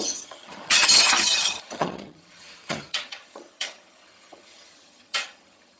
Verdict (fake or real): fake